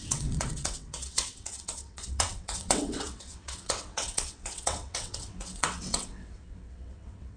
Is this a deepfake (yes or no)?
yes